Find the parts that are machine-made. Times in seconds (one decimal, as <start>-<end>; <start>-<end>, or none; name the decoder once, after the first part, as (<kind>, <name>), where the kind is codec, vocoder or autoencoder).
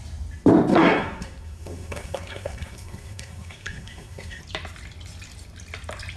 0.7-4.4 (codec, SNAC)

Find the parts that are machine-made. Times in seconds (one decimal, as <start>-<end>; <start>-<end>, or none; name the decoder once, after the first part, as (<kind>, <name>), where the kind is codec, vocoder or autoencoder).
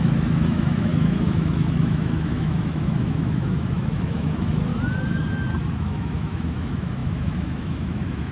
0.0-4.7 (autoencoder, DAC-VAE); 5.8-8.3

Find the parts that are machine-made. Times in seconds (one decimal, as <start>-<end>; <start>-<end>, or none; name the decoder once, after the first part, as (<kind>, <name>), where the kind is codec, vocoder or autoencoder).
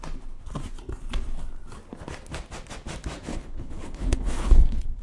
3.3-5.0 (codec, HILCodec)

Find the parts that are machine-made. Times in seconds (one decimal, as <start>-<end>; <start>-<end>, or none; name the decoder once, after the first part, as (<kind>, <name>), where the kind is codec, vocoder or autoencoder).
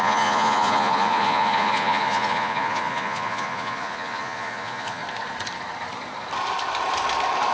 0.0-5.0 (vocoder, Vocos)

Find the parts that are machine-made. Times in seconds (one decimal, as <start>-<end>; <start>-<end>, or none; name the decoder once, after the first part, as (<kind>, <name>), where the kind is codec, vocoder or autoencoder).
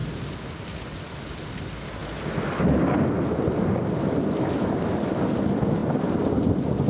none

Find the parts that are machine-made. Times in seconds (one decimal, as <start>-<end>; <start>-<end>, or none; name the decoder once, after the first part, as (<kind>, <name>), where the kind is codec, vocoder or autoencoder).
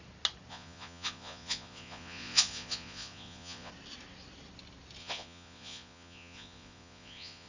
0.5-3.7 (vocoder, Vocos); 5.0-7.5